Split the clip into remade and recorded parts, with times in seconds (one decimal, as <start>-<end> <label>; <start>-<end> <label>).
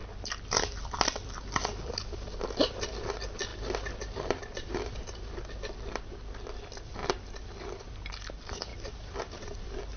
0.0-10.0 recorded